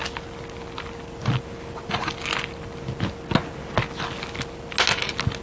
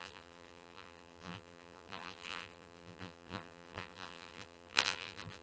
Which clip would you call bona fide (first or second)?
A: first